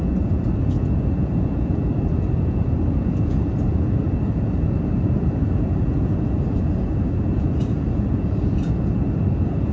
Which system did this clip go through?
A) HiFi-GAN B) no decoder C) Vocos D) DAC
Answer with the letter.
C